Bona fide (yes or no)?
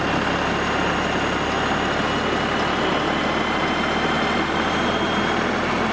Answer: yes